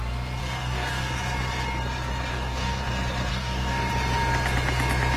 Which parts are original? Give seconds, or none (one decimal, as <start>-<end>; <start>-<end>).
0.0-0.4; 1.2-2.3; 2.8-3.3; 3.9-5.2